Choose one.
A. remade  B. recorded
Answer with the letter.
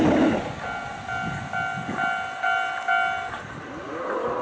B